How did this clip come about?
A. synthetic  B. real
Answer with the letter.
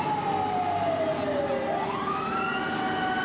B